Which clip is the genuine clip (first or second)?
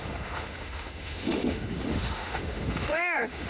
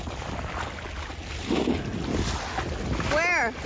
second